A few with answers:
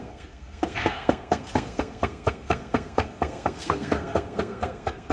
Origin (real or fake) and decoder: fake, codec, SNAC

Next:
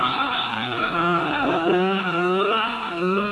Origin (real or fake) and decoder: fake, codec, SNAC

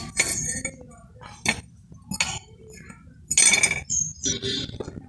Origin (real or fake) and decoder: real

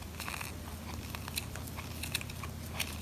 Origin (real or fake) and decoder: real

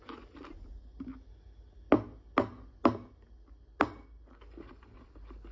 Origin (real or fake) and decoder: real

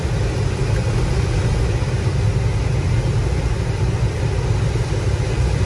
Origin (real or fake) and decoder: real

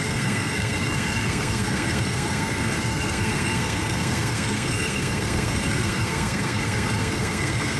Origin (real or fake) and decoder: fake, codec, SNAC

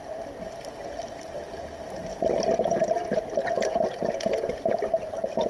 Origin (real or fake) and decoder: real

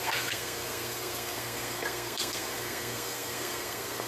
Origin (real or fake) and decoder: fake, codec, SNAC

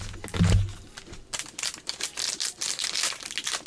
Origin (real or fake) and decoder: real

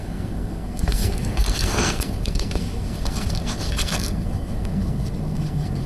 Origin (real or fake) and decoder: fake, codec, SNAC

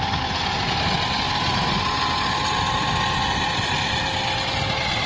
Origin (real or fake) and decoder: real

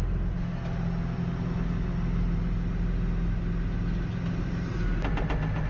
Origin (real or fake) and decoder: real